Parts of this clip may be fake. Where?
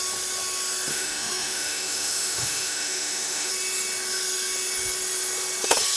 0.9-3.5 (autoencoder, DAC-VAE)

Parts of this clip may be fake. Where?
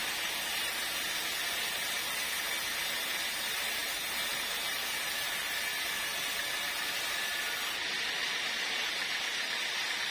none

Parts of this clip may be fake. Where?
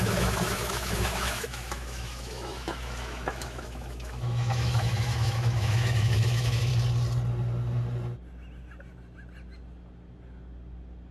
0.0-6.7 (autoencoder, DAC-VAE)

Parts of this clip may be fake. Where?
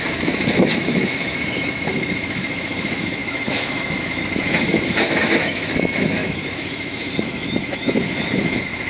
0.0-8.9 (autoencoder, DAC-VAE)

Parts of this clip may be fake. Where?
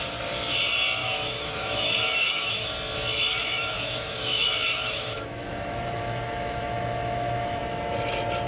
1.0-2.7 (autoencoder, DAC-VAE); 3.3-7.6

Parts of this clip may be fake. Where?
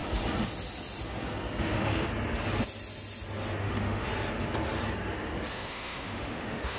1.6-2.1 (autoencoder, DAC-VAE); 3.6-4.1; 5.5-6.8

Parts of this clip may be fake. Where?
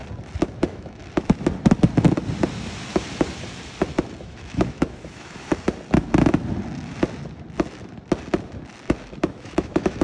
0.6-1.0 (autoencoder, DAC-VAE); 4.2-5.5; 9.3-10.0